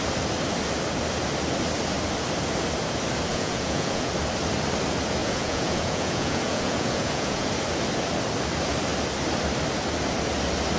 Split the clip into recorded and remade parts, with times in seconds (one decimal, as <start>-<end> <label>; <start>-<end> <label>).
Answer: 0.0-3.3 recorded; 3.3-4.1 remade; 4.1-5.2 recorded; 5.2-7.5 remade; 7.5-10.8 recorded